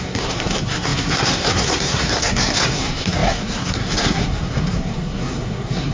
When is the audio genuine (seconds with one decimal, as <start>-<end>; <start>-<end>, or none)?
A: none